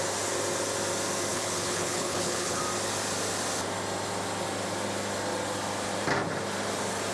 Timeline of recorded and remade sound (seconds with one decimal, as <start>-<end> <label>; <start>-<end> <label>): 0.0-1.3 recorded; 1.3-2.6 remade; 2.6-7.1 recorded